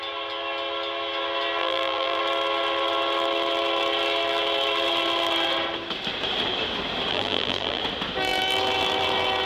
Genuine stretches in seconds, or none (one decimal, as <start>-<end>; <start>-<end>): 0.0-1.6; 2.2-7.1; 7.8-9.5